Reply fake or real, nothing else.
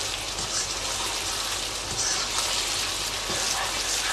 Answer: real